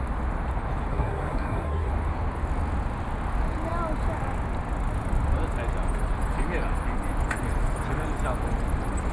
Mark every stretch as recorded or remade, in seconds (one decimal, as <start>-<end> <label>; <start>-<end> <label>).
0.0-0.9 recorded; 0.9-1.9 remade; 1.9-9.1 recorded